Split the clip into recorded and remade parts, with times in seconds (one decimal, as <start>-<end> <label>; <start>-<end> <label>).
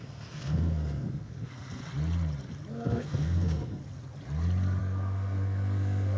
0.0-1.8 remade; 1.8-2.7 recorded; 2.7-3.8 remade; 3.8-4.8 recorded; 4.8-6.2 remade